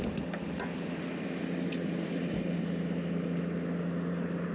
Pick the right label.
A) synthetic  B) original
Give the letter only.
B